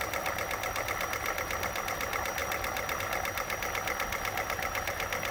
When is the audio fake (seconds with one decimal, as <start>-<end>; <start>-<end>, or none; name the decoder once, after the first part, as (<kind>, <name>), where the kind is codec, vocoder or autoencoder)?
none